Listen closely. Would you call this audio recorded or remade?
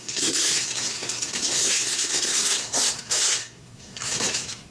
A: remade